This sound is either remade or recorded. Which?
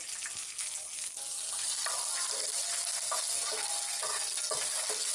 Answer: recorded